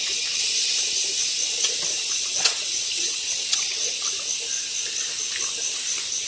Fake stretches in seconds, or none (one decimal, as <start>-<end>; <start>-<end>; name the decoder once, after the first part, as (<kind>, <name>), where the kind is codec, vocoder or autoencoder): 2.0-4.0 (vocoder, WaveNeXt)